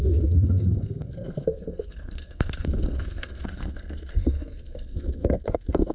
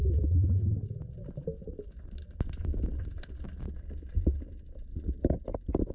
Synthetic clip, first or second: first